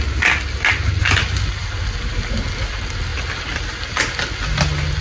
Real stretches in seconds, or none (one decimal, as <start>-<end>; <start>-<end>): 0.0-5.0